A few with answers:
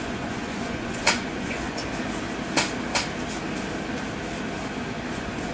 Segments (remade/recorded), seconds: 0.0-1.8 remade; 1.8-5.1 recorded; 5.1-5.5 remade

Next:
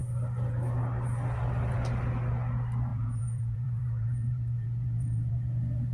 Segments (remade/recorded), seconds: 0.0-2.9 recorded; 2.9-5.3 remade; 5.3-5.9 recorded

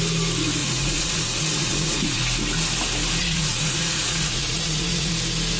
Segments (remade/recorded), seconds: 0.0-0.6 recorded; 0.6-2.2 remade; 2.2-3.2 recorded; 3.2-5.1 remade; 5.1-5.6 recorded

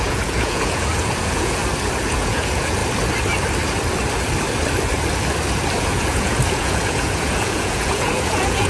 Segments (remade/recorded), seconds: 0.0-1.6 remade; 1.6-2.1 recorded; 2.1-2.8 remade; 2.8-5.8 recorded; 5.8-8.7 remade